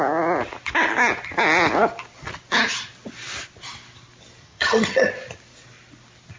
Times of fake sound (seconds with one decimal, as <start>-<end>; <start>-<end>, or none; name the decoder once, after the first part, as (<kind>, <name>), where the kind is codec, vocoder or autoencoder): 4.4-5.1 (vocoder, HiFi-GAN)